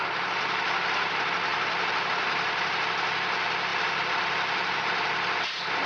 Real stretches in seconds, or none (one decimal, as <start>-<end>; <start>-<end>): 0.0-1.5; 2.9-3.7; 4.8-5.9